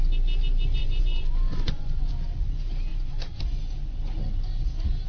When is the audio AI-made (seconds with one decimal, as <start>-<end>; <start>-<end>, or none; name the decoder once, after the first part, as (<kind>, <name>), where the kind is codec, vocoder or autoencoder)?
0.8-2.1 (vocoder, Vocos); 2.9-3.4